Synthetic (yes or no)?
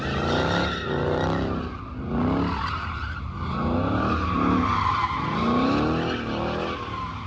no